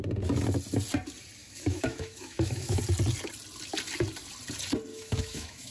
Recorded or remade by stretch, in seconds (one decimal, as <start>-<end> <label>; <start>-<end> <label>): 0.0-1.4 recorded; 1.4-2.8 remade; 2.8-4.9 recorded; 4.9-5.7 remade